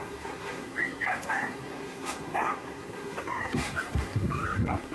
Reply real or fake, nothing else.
fake